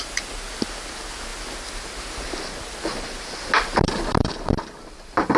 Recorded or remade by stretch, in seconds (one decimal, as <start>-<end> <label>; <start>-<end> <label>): 0.0-5.4 recorded